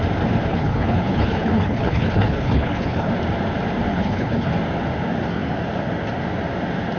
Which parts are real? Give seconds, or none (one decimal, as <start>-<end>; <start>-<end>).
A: 0.0-0.5; 3.1-3.9; 4.5-7.0